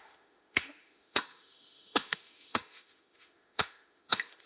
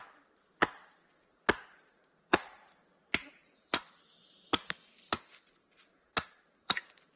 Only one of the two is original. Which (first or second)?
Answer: second